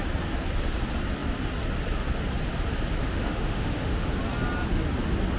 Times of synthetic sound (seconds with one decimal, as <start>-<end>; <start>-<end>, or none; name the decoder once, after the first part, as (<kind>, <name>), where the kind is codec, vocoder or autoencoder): 3.0-4.1 (autoencoder, DAC-VAE)